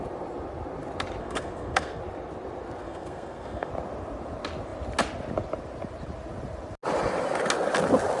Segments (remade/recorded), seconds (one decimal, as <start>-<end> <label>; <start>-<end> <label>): 0.0-1.2 recorded; 1.2-2.0 remade; 2.0-2.8 recorded; 2.8-3.7 remade; 3.7-8.2 recorded